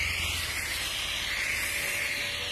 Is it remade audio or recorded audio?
recorded